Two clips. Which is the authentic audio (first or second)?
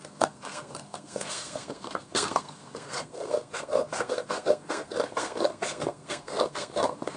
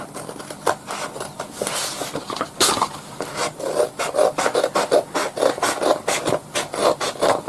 second